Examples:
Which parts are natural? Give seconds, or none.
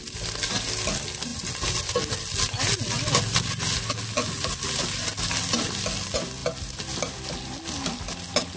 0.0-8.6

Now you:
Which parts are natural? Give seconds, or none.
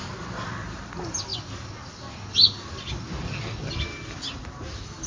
0.0-5.1